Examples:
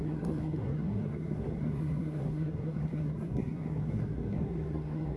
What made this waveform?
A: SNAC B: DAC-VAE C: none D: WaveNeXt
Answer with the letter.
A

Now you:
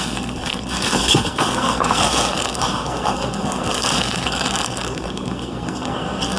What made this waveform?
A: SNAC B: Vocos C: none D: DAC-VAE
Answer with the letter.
A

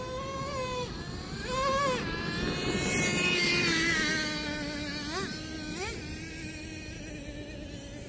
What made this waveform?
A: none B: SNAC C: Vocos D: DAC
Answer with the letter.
A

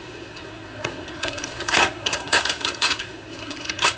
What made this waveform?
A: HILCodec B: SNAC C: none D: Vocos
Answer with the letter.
B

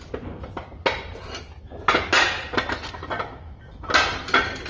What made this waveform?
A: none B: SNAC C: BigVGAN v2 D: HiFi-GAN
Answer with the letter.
A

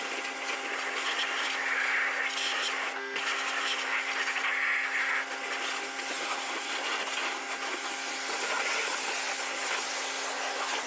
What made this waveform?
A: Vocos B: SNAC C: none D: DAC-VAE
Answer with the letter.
C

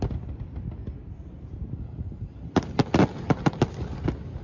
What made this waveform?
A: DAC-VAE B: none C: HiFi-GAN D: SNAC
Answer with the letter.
B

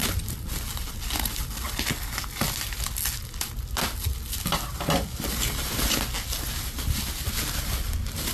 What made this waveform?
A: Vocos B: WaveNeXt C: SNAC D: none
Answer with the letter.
D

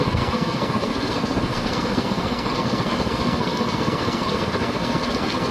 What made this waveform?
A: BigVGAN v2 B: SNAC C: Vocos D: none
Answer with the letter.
B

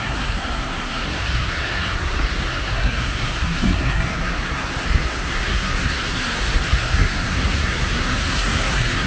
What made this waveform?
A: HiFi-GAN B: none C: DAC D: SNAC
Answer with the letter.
D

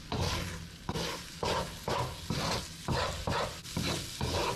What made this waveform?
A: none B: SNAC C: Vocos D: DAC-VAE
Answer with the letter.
A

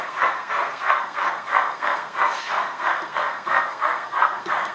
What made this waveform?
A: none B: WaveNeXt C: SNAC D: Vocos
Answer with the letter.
C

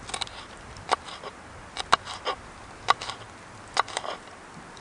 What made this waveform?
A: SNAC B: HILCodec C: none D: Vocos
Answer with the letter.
C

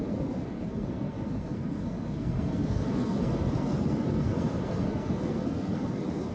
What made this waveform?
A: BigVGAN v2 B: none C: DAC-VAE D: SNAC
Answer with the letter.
D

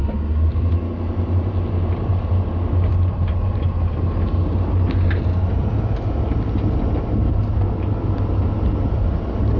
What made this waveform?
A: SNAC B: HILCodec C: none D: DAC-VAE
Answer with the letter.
C